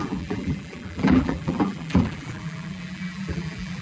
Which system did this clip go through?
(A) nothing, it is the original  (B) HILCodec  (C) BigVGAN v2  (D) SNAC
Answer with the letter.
C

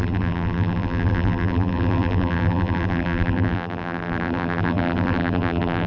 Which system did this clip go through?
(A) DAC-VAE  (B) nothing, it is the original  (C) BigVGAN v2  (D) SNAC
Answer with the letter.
C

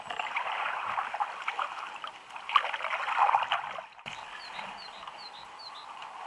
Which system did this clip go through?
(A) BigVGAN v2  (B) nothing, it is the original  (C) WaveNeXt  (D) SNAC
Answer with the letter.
A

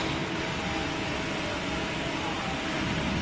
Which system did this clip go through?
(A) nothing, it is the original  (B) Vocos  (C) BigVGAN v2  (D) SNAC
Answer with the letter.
C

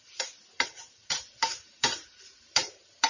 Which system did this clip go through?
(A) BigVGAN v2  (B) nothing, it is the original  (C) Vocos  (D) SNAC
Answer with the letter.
A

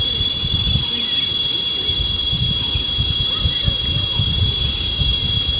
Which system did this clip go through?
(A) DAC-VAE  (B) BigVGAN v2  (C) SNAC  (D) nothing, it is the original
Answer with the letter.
B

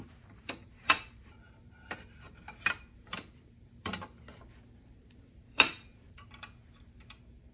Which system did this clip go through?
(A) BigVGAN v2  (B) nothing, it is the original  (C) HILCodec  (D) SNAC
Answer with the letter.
A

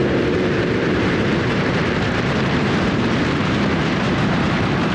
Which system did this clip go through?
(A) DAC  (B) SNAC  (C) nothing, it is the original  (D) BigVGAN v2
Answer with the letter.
D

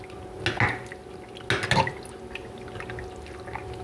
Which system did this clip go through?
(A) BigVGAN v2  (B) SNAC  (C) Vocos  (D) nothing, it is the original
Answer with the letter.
D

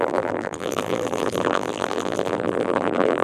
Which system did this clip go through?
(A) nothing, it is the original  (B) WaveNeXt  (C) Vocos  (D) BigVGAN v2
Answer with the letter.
D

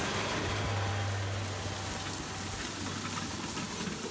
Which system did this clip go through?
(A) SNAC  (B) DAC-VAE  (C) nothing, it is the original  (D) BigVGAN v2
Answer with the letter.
C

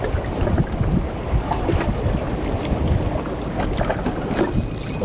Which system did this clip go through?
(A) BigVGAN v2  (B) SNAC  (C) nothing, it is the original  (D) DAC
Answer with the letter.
C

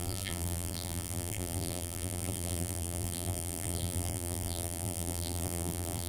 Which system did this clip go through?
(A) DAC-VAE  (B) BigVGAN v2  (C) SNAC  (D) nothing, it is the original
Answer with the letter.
B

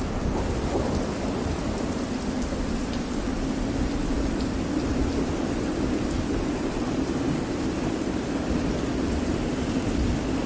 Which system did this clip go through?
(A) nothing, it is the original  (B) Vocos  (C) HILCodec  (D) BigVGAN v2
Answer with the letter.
A